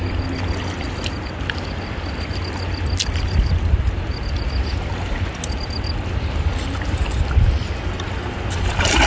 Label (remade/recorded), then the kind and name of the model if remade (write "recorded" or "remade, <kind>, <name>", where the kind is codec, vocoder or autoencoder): recorded